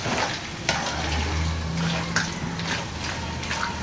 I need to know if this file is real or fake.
real